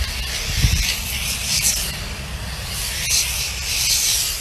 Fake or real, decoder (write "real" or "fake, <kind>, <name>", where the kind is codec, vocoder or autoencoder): fake, vocoder, BigVGAN v2